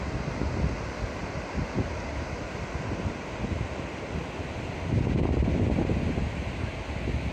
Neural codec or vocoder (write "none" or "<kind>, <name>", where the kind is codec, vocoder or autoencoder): none